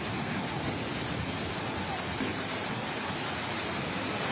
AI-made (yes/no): no